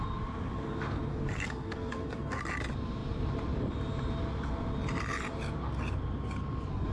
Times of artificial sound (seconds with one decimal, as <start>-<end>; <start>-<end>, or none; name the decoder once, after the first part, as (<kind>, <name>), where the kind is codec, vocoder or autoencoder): 1.1-2.4 (codec, SNAC)